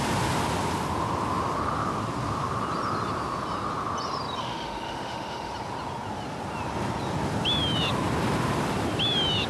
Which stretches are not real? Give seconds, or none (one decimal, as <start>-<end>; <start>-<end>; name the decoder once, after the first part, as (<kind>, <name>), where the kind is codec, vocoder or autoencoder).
4.4-5.5 (autoencoder, DAC-VAE)